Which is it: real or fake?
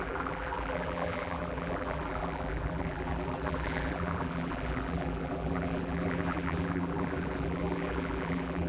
fake